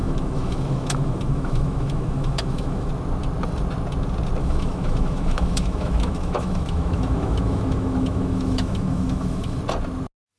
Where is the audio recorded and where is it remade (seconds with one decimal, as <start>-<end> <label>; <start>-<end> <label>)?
0.0-2.9 remade; 2.9-4.4 recorded; 4.4-9.6 remade; 9.6-10.4 recorded